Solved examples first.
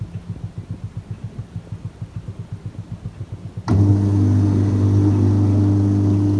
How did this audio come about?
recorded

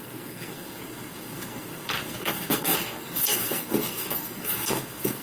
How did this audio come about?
remade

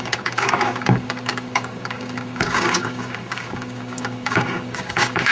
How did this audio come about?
remade